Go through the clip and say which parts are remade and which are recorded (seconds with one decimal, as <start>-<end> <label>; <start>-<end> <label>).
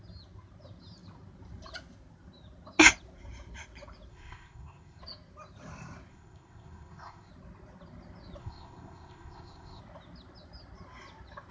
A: 0.0-4.1 recorded; 4.1-5.0 remade; 5.0-6.1 recorded; 6.1-7.3 remade; 7.3-8.4 recorded; 8.4-9.8 remade; 9.8-11.5 recorded